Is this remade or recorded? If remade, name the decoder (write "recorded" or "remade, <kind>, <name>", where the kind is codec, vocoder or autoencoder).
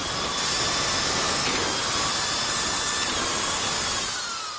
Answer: recorded